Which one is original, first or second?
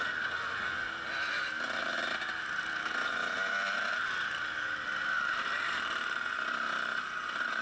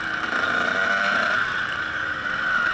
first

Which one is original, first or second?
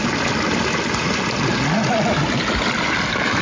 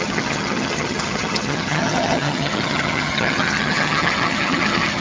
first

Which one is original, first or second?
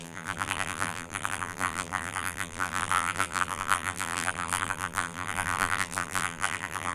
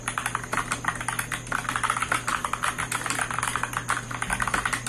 second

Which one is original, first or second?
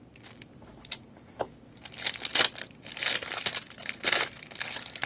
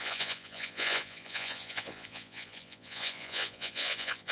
first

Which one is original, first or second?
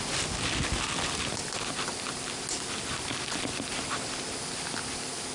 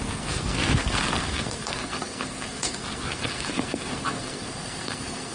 first